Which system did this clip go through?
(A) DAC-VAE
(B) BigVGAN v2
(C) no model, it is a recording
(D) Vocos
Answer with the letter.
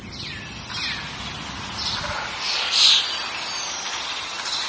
C